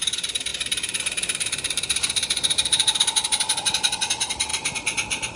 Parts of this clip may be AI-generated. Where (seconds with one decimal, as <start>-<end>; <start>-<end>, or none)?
0.5-3.0; 4.5-5.4